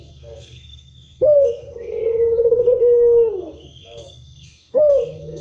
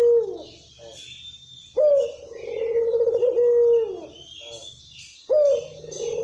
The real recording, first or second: second